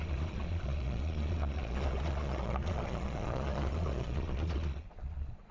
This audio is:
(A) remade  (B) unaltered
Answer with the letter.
A